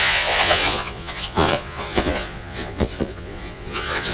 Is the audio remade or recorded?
remade